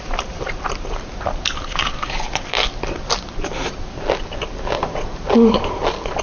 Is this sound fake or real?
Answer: real